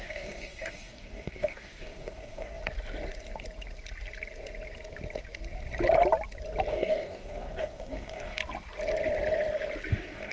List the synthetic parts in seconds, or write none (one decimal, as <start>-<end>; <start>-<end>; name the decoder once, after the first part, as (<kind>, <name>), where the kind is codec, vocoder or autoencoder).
0.0-2.6 (codec, DAC); 6.7-8.4; 9.9-10.3